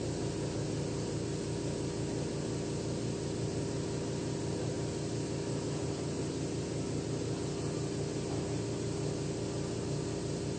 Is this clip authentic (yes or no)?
yes